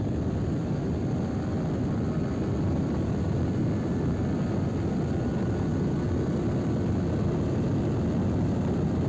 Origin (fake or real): real